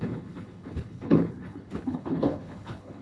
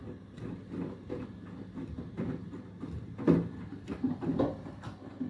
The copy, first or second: first